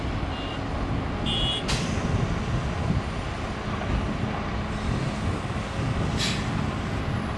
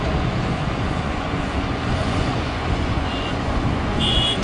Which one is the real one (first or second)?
first